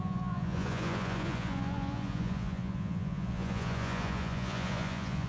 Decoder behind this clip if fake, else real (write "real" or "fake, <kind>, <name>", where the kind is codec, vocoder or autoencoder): fake, vocoder, Vocos